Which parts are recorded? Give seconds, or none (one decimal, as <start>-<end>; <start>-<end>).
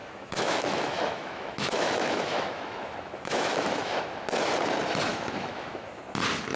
4.0-5.1; 6.0-6.6